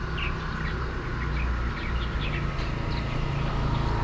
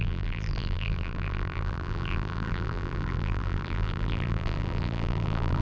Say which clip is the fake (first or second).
second